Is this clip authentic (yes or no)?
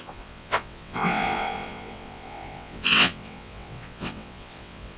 no